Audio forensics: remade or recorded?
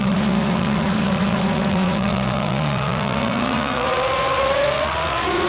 remade